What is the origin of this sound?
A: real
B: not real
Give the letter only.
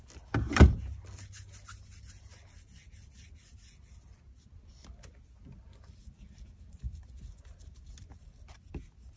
A